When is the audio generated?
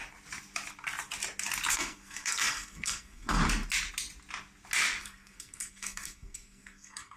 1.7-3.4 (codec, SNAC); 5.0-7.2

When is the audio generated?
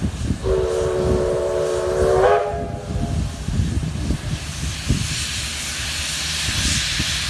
none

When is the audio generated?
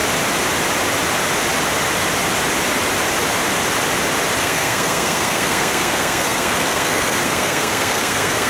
4.4-8.5 (codec, SNAC)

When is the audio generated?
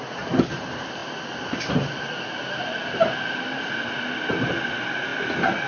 none